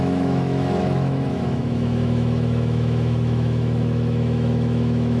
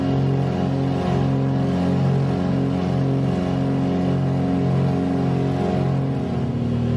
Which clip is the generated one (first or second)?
first